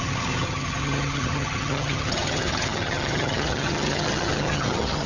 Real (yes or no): no